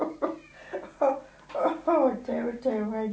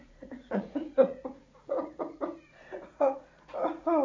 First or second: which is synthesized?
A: second